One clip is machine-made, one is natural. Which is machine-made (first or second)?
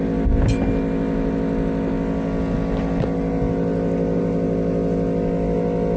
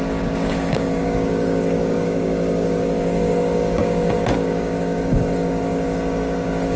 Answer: second